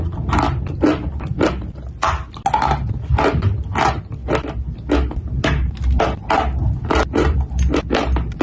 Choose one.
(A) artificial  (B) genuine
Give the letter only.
B